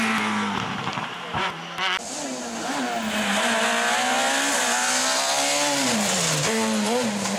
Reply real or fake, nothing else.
real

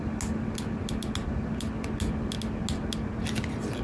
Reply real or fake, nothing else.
real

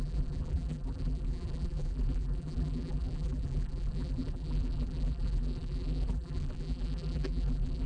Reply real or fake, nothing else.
fake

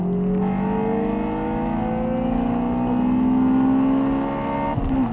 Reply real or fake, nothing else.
real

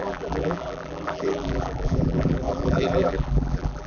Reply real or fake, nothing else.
fake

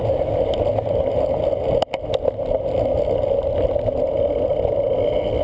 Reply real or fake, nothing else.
real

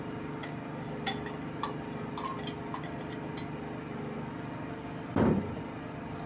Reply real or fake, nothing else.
real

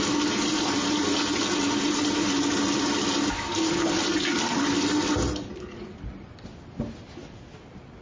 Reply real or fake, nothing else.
real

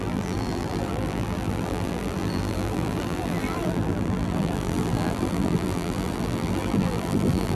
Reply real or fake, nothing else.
fake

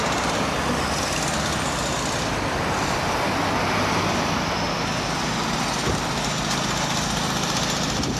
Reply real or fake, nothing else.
real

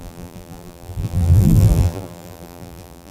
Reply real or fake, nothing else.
fake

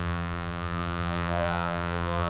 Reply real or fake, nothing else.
fake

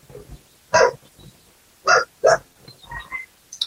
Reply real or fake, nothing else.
real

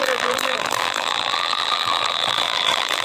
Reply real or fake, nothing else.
fake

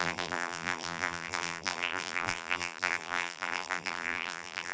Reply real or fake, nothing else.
fake